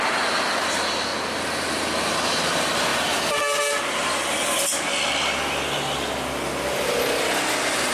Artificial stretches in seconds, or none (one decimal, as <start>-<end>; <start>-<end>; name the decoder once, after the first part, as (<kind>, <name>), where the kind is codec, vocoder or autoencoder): none

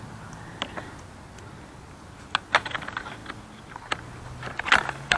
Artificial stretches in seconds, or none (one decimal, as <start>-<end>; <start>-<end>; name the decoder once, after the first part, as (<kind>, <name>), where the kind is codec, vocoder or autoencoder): none

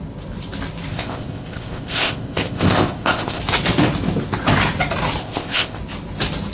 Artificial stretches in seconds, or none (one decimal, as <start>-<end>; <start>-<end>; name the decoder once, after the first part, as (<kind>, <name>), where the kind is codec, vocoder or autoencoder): 0.9-3.4 (codec, ZipCodec); 5.2-5.8

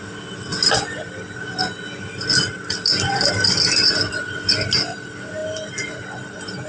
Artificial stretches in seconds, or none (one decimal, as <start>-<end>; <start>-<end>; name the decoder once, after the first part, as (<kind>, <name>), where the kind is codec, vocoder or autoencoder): none

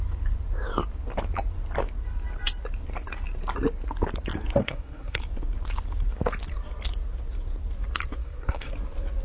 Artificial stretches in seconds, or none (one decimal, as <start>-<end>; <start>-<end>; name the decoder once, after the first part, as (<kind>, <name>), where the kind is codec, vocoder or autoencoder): 4.6-5.2 (codec, SNAC); 8.2-8.7

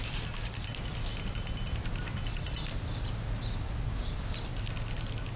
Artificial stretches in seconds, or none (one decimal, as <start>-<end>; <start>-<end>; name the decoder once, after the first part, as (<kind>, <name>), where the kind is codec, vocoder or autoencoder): 0.0-4.5 (vocoder, BigVGAN v2)